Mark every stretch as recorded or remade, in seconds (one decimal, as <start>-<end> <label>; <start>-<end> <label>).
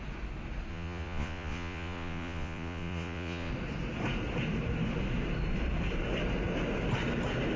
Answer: 0.0-0.7 recorded; 0.7-3.5 remade; 3.5-7.6 recorded